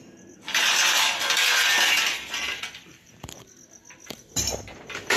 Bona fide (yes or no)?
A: no